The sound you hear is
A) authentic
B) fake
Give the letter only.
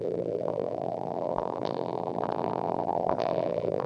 B